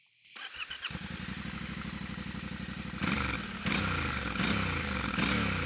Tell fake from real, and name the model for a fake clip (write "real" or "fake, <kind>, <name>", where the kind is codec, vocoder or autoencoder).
real